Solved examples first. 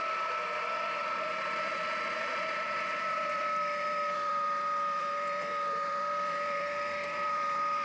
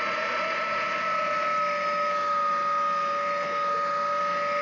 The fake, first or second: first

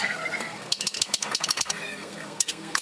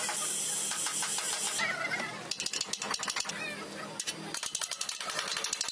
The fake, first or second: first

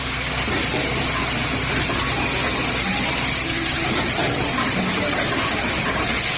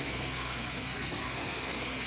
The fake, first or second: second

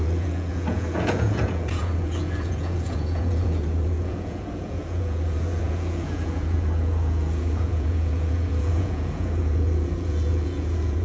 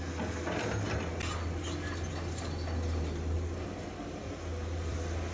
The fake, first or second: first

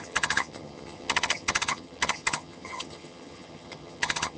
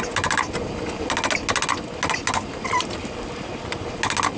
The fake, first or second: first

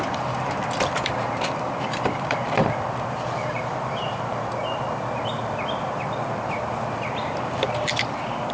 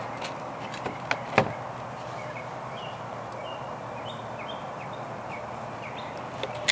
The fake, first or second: first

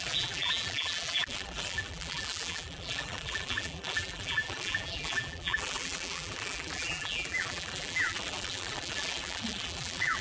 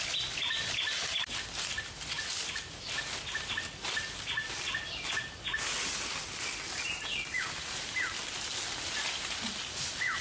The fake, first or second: first